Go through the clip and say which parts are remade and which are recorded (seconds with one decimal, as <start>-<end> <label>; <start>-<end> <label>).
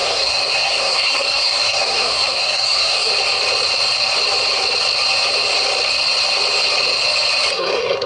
0.0-3.1 remade; 3.1-7.5 recorded; 7.5-8.1 remade